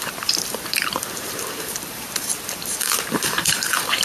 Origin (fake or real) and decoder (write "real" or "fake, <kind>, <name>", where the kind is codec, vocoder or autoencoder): fake, vocoder, BigVGAN v2